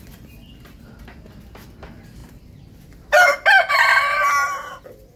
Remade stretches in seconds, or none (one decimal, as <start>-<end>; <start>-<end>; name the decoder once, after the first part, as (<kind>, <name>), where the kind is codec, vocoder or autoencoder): none